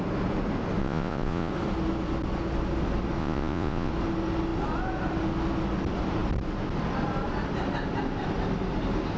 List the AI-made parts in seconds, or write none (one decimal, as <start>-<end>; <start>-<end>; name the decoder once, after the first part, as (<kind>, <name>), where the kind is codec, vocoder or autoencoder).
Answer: 0.8-1.5 (vocoder, Vocos); 3.2-3.9